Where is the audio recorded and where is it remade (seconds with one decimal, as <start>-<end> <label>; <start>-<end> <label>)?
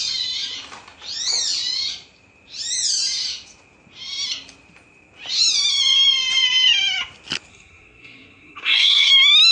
0.0-7.5 recorded; 7.5-9.1 remade; 9.1-9.5 recorded